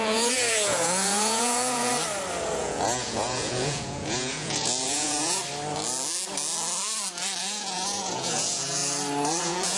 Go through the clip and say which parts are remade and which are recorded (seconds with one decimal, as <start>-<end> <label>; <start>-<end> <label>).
0.0-1.9 remade; 1.9-2.6 recorded; 2.6-5.4 remade; 5.4-7.4 recorded; 7.4-8.8 remade; 8.8-9.4 recorded; 9.4-9.8 remade